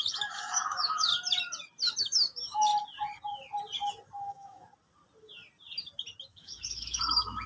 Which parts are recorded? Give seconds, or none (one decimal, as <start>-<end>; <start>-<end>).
1.1-2.0; 2.7-4.3; 4.7-6.3